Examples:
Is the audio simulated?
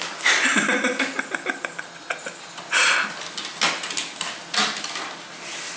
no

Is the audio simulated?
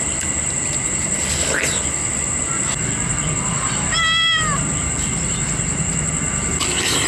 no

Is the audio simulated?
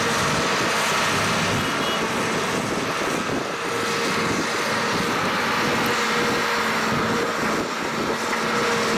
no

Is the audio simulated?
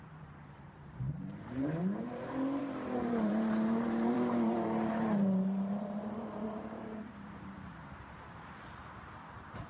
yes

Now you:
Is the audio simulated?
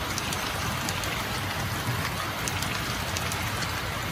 yes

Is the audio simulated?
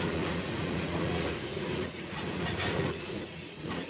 yes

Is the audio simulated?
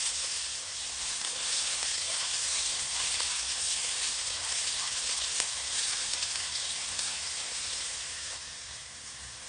yes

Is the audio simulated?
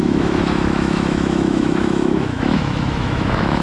yes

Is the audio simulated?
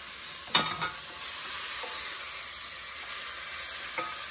no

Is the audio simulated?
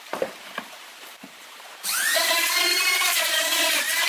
yes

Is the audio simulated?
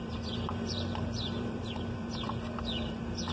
yes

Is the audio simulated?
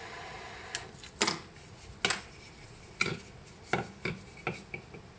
no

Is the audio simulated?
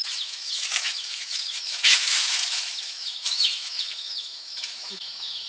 yes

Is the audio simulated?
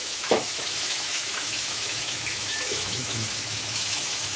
yes